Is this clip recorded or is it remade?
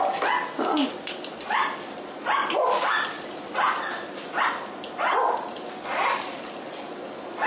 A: recorded